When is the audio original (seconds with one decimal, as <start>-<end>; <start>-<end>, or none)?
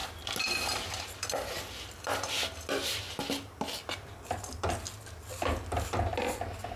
0.0-6.8